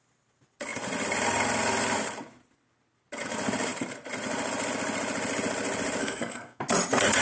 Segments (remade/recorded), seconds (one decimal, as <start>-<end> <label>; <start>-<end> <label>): 0.0-6.0 recorded; 6.0-6.6 remade; 6.6-7.2 recorded